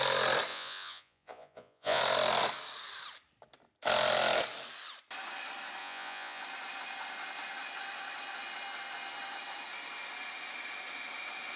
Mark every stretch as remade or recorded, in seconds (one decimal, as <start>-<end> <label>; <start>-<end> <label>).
0.0-0.5 recorded; 0.5-2.0 remade; 2.0-5.8 recorded; 5.8-6.4 remade; 6.4-11.6 recorded